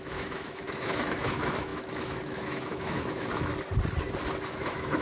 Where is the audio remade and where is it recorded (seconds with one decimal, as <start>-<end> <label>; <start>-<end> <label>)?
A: 0.0-3.5 remade; 3.5-4.5 recorded; 4.5-5.0 remade

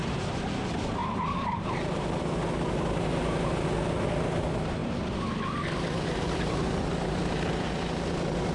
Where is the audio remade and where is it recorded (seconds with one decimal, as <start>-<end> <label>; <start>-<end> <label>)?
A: 0.0-0.5 remade; 0.5-1.0 recorded; 1.0-2.2 remade; 2.2-8.5 recorded

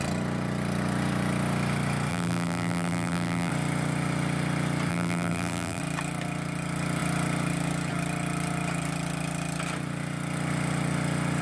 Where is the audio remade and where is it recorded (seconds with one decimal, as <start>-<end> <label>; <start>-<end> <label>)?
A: 0.0-2.1 recorded; 2.1-3.5 remade; 3.5-4.9 recorded; 4.9-5.8 remade; 5.8-11.4 recorded

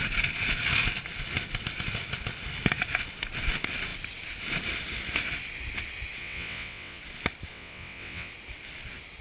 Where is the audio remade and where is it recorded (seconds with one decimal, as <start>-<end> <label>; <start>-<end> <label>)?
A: 0.0-6.2 recorded; 6.2-7.0 remade; 7.0-7.5 recorded; 7.5-8.3 remade; 8.3-9.2 recorded

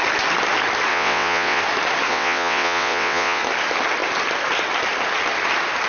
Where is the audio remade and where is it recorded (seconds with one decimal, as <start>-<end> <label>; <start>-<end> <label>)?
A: 0.0-0.9 recorded; 0.9-1.6 remade; 1.6-2.1 recorded; 2.1-3.4 remade; 3.4-5.9 recorded

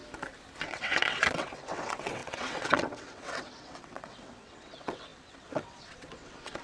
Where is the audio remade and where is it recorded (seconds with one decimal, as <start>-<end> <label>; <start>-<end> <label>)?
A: 0.0-0.6 recorded; 0.6-6.6 remade

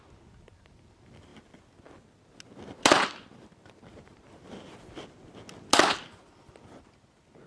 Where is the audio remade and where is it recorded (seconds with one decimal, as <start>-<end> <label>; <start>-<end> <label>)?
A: 0.0-7.5 recorded